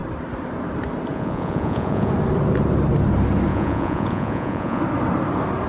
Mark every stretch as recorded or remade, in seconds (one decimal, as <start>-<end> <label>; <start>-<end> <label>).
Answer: 0.0-1.1 recorded; 1.1-2.1 remade; 2.1-3.5 recorded; 3.5-4.8 remade; 4.8-5.7 recorded